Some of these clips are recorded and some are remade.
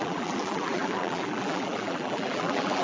remade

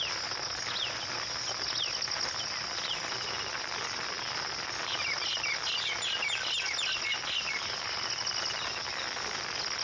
recorded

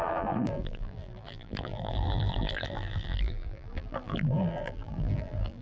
remade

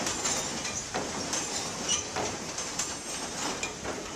remade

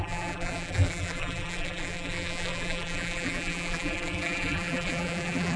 remade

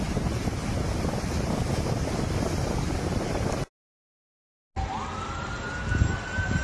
recorded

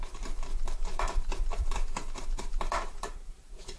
remade